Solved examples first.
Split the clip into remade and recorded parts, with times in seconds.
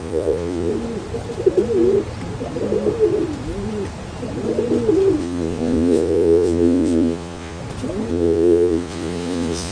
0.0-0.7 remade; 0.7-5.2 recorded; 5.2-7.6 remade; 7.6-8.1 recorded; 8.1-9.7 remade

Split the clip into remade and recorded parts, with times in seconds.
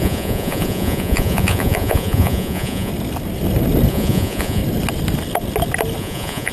0.0-2.9 remade; 2.9-3.9 recorded; 3.9-4.6 remade; 4.6-6.0 recorded; 6.0-6.5 remade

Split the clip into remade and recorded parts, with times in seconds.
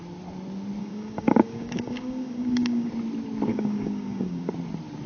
0.0-0.8 recorded; 0.8-2.9 remade; 2.9-3.5 recorded; 3.5-4.5 remade; 4.5-5.1 recorded